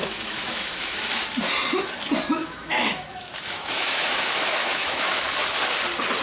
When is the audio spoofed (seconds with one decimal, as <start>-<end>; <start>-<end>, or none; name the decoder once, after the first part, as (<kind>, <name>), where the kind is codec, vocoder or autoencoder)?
0.0-1.2 (autoencoder, DAC-VAE); 2.4-5.2